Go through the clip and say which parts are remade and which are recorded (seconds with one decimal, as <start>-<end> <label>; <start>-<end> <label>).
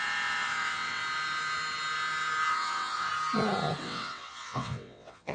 0.0-1.0 remade; 1.0-2.5 recorded; 2.5-3.1 remade; 3.1-3.8 recorded; 3.8-5.3 remade